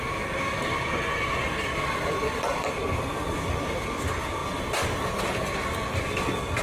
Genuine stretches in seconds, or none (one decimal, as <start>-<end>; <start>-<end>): 0.0-6.6